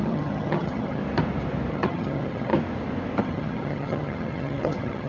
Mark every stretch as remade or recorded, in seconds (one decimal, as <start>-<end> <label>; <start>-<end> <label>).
0.0-1.0 remade; 1.0-1.7 recorded; 1.7-2.5 remade; 2.5-3.2 recorded; 3.2-5.1 remade